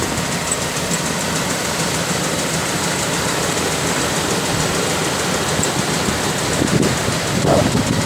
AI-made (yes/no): yes